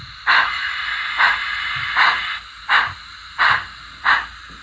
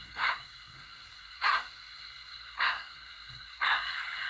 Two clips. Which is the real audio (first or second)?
first